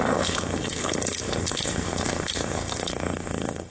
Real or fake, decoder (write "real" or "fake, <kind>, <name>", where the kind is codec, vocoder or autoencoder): fake, codec, SNAC